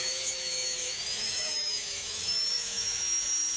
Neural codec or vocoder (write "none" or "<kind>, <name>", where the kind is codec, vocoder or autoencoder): autoencoder, DAC-VAE